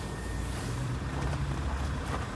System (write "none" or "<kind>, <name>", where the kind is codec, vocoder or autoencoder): vocoder, BigVGAN v2